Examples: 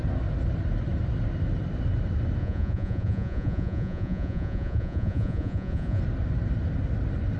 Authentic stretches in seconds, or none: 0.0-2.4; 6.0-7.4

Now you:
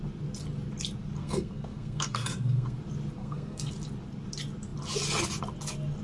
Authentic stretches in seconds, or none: 0.0-1.2; 2.8-3.2; 3.7-6.0

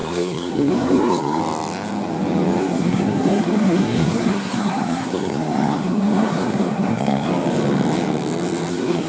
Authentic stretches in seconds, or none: 1.4-2.6; 7.3-8.7

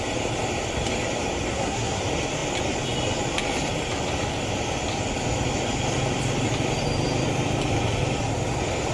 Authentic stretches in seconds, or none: 0.0-1.5; 2.0-8.9

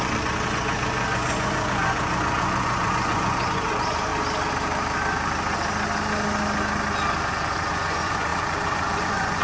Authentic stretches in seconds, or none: 4.1-7.3

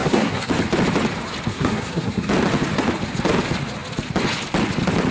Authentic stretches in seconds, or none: 0.5-1.5; 2.3-5.1

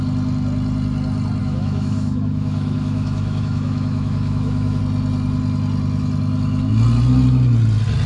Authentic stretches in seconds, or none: 0.0-1.4; 4.8-8.1